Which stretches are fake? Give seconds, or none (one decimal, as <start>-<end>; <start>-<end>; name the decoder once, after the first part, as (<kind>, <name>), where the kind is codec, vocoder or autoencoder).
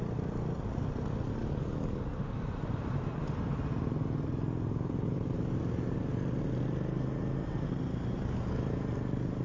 1.4-2.2 (codec, DAC)